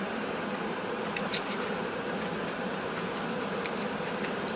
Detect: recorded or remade remade